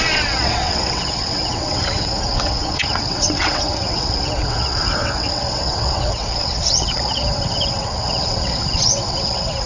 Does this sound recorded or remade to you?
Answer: remade